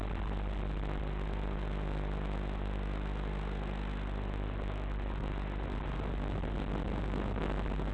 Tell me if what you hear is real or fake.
real